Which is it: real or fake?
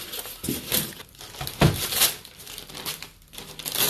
real